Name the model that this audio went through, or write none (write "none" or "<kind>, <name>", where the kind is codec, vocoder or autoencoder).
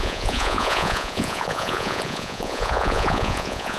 vocoder, Vocos